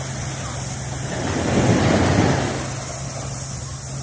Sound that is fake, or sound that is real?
real